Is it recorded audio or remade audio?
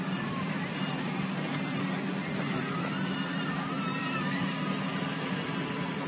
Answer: remade